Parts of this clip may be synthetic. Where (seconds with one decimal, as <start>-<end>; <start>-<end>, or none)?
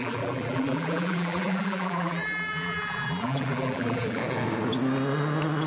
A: 0.0-4.2